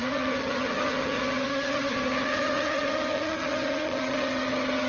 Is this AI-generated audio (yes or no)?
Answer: yes